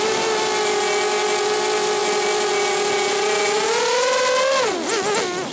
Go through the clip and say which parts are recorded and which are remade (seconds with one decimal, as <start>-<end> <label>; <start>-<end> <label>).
0.0-5.5 recorded